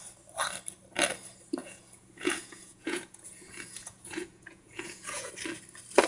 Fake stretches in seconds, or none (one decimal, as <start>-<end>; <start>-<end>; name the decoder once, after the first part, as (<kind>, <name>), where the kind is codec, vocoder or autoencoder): 1.6-5.3 (vocoder, Vocos)